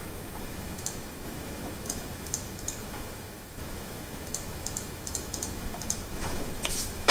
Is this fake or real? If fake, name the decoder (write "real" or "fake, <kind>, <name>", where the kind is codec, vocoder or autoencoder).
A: fake, autoencoder, DAC-VAE